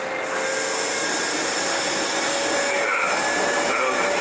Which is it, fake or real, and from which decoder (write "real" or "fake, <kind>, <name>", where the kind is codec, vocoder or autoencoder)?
real